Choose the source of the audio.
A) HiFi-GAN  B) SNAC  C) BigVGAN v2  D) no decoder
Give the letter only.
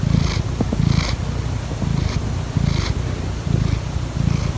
D